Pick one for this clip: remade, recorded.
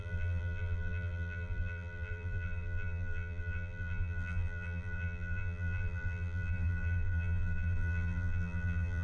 remade